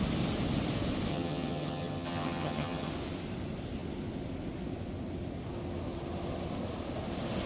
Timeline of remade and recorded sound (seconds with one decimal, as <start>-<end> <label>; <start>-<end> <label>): 0.0-1.1 recorded; 1.1-2.9 remade; 2.9-7.5 recorded